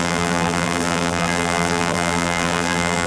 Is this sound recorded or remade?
remade